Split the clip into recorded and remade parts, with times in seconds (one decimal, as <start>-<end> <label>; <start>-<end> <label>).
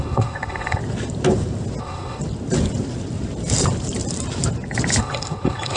0.0-0.8 remade; 0.8-1.8 recorded; 1.8-2.2 remade; 2.2-5.0 recorded; 5.0-5.8 remade